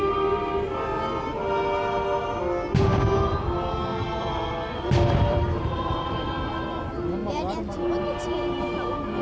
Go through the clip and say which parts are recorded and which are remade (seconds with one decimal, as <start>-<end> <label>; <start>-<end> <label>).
0.0-3.9 recorded; 3.9-6.1 remade; 6.1-7.2 recorded; 7.2-8.4 remade; 8.4-9.2 recorded